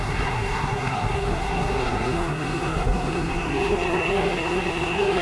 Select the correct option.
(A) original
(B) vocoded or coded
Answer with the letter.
B